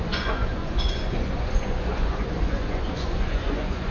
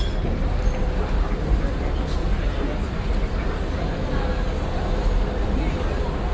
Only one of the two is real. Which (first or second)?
second